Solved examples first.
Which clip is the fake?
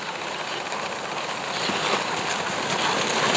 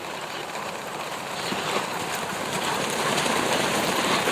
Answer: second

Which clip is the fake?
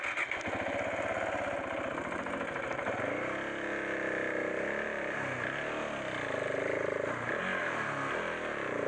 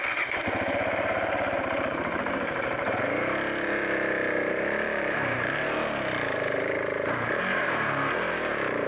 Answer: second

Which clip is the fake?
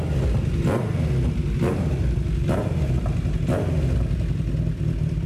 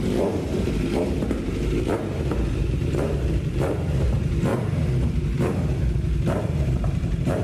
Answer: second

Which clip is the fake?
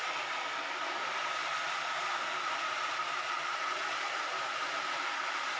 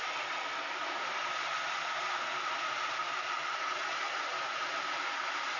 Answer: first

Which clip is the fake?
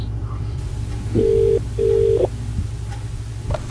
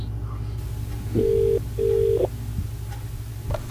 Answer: first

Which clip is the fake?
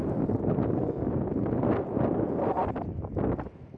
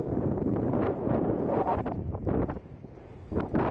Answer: second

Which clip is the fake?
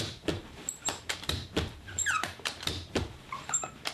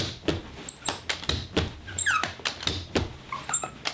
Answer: first